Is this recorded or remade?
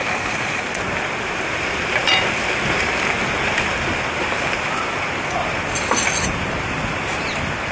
recorded